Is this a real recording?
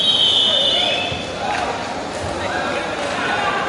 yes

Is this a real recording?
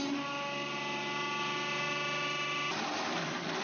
yes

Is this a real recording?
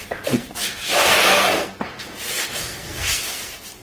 no